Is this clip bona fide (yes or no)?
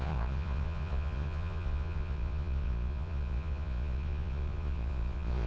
no